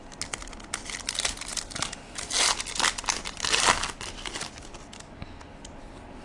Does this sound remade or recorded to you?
recorded